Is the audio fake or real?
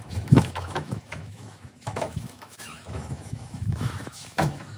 fake